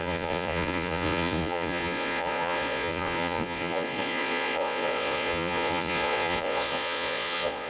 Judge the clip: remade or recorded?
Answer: remade